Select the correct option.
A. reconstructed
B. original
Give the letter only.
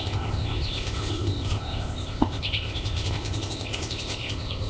A